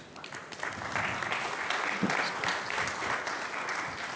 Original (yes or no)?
yes